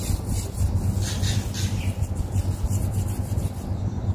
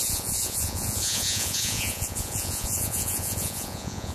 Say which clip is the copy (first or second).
second